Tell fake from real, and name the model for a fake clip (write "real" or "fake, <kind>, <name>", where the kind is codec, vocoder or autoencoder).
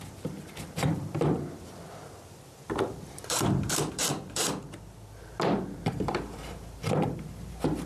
fake, vocoder, BigVGAN v2